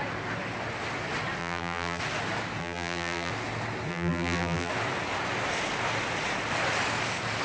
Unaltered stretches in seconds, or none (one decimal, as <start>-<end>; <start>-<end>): 0.0-1.4; 2.0-2.6; 3.3-3.9; 4.7-7.4